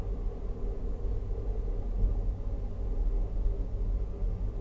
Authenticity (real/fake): real